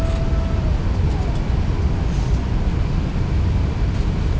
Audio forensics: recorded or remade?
recorded